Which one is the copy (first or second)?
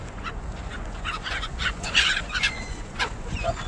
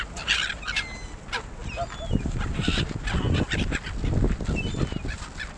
first